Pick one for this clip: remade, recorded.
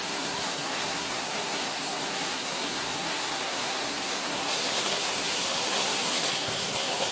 remade